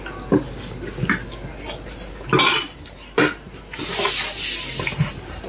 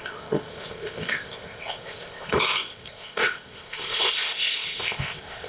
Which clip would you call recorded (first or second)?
first